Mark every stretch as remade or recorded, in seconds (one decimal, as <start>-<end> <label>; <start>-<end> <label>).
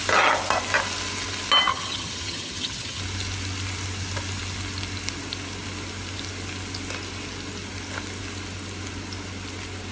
0.0-1.7 recorded; 1.7-3.0 remade; 3.0-9.9 recorded